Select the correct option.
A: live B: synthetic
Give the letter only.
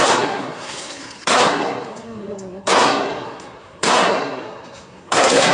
B